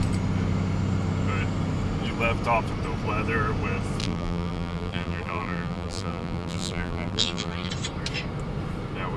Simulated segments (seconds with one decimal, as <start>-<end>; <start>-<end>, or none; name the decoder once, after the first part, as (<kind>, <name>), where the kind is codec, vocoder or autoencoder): 4.0-7.7 (vocoder, BigVGAN v2)